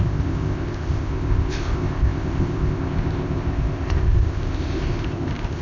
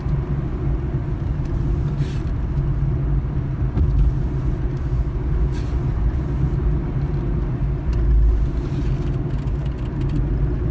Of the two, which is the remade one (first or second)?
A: first